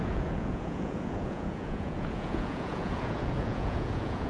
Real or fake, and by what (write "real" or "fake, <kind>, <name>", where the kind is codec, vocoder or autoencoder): fake, vocoder, Vocos